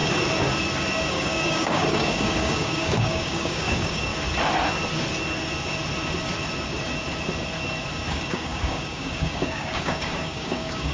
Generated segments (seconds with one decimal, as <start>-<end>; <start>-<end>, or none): 1.1-4.1; 8.1-10.9